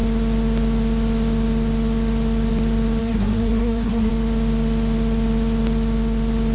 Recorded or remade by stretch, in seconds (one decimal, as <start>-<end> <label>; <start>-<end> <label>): 0.0-3.0 recorded; 3.0-4.1 remade; 4.1-6.5 recorded